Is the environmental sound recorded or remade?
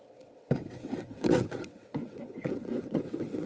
remade